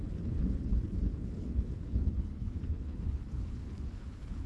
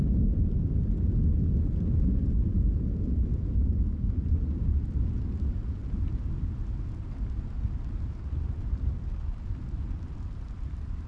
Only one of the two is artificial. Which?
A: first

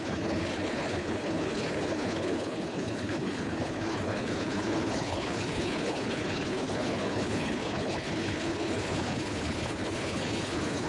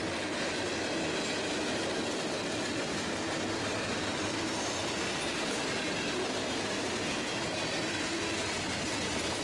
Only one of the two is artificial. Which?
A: first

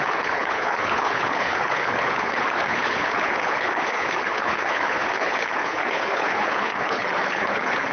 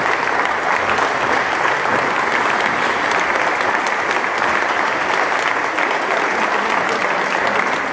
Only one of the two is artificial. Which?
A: first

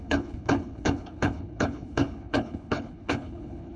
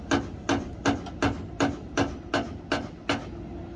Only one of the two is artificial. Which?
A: first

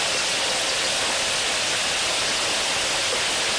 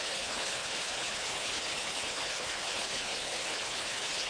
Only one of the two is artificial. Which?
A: second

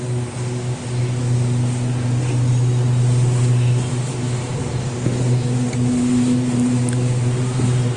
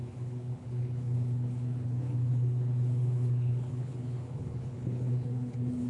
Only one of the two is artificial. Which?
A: second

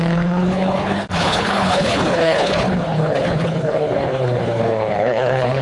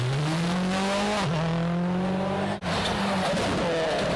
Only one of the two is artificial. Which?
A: first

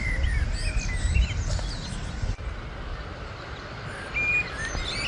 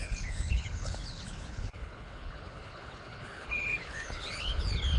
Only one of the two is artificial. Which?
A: second